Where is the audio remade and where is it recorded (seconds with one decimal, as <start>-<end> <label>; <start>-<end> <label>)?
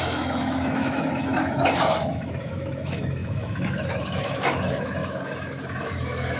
0.0-6.4 remade